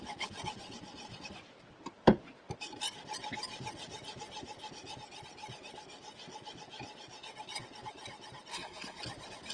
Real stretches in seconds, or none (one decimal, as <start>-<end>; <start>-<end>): 0.0-8.5; 9.0-9.5